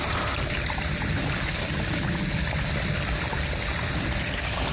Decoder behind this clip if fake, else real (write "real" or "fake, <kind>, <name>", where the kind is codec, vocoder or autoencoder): real